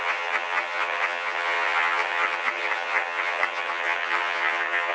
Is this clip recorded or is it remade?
remade